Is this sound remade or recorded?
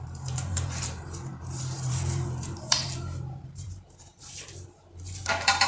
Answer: remade